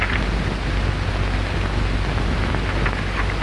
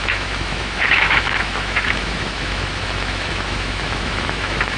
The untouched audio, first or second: first